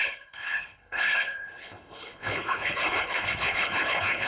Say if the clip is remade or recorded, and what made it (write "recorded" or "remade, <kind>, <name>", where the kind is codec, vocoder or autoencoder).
remade, codec, HILCodec